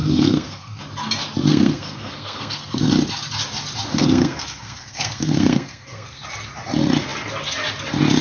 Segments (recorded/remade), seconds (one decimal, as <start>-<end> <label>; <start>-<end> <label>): 0.0-0.8 remade; 0.8-1.5 recorded; 1.5-2.9 remade; 2.9-3.9 recorded; 3.9-6.2 remade; 6.2-8.2 recorded